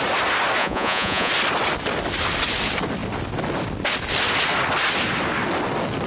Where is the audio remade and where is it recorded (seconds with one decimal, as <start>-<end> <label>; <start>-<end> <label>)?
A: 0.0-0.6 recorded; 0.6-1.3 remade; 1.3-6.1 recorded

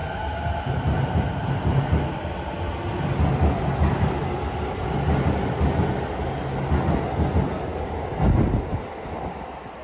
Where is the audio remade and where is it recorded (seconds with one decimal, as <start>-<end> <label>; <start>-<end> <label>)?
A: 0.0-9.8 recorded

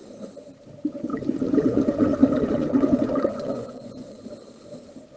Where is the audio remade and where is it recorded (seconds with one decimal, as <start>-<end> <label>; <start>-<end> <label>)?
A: 0.0-1.1 recorded; 1.1-4.2 remade; 4.2-5.2 recorded

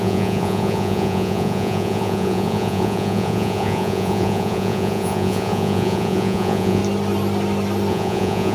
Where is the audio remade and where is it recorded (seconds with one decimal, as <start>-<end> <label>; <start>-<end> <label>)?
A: 0.0-6.8 remade; 6.8-7.9 recorded; 7.9-8.5 remade

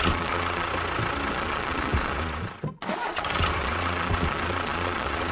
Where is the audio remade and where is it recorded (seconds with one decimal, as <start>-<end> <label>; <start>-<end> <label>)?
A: 0.0-0.7 remade; 0.7-1.3 recorded; 1.3-5.3 remade

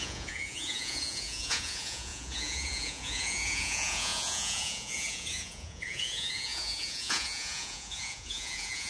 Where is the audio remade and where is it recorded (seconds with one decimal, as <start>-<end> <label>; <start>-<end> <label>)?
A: 0.0-8.9 remade